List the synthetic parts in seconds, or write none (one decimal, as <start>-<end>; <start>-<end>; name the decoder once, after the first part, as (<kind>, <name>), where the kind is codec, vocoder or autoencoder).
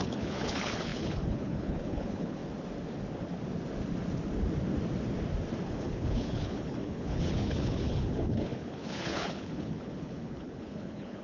0.0-2.4 (codec, HILCodec); 5.6-11.2